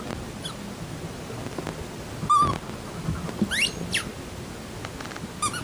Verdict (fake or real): real